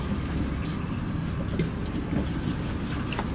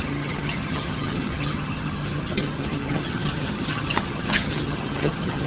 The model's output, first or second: second